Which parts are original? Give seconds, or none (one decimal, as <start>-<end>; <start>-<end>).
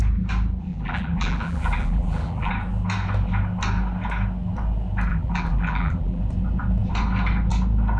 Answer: 0.0-0.7; 2.5-5.1; 6.2-8.0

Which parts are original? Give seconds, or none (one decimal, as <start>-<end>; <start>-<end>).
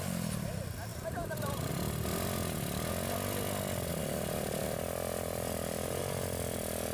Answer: 0.0-0.9; 1.7-6.9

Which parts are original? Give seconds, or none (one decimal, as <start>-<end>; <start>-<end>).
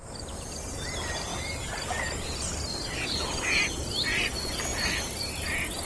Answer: 0.0-4.7; 5.5-5.9